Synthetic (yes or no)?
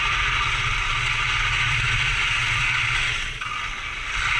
no